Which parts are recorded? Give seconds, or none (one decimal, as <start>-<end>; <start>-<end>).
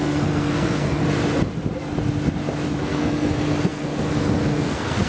1.0-2.8